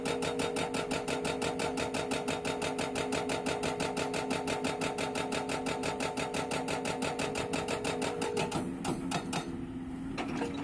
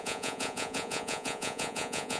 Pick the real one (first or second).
first